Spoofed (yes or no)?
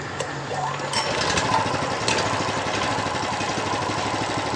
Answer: no